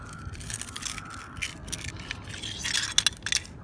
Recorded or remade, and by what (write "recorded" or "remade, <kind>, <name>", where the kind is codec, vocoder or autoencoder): recorded